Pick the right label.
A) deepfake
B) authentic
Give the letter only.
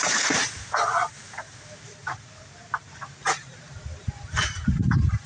A